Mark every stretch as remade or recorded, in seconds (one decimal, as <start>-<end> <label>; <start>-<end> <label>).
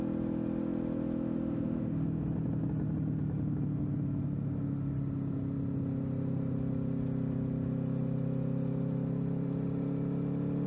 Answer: 0.0-10.7 recorded